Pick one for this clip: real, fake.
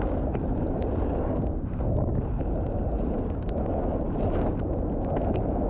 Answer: real